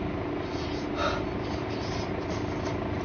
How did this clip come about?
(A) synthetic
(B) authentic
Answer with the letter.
B